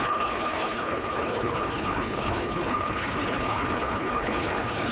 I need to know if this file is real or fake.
fake